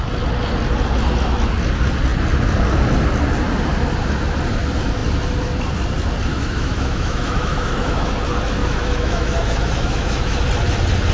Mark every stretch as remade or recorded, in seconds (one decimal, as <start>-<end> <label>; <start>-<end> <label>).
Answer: 0.0-6.3 recorded; 6.3-8.1 remade; 8.1-8.6 recorded; 8.6-10.4 remade; 10.4-11.1 recorded